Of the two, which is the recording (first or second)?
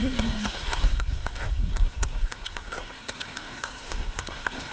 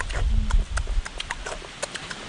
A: second